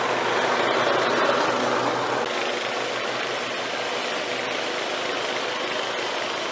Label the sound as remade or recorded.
recorded